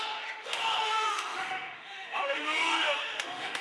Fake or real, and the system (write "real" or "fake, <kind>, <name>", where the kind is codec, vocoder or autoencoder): fake, autoencoder, DAC-VAE